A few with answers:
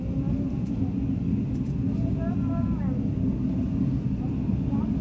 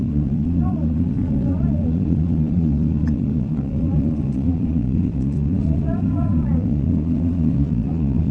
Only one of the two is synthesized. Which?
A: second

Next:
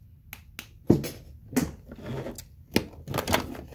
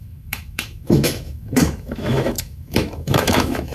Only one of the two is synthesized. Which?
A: second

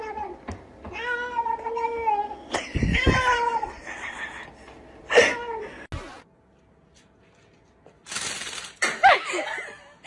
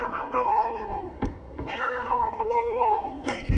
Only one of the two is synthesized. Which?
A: second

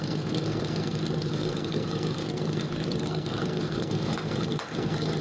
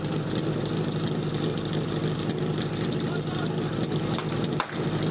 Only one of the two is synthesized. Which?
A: first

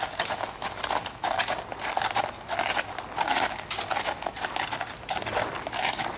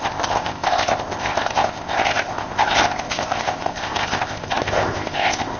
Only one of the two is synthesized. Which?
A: second